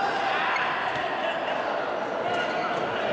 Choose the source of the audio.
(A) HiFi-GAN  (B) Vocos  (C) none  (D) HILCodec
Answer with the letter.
C